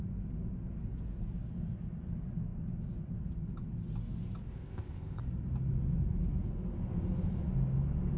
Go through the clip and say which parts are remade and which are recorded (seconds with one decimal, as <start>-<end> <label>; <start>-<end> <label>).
0.0-4.5 recorded; 4.5-5.2 remade; 5.2-8.2 recorded